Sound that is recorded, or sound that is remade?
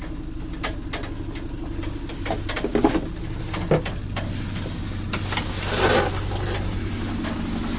recorded